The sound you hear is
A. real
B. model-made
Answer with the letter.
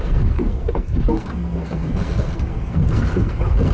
B